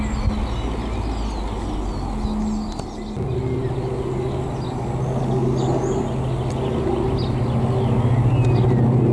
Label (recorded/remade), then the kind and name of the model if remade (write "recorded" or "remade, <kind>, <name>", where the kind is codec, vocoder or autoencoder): recorded